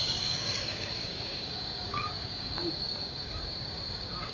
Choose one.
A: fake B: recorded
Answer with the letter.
A